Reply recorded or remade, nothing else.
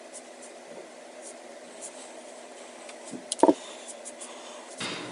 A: remade